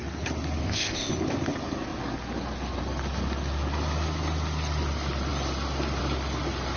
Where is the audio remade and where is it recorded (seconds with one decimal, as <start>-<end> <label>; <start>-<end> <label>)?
0.0-0.6 recorded; 0.6-1.1 remade; 1.1-6.8 recorded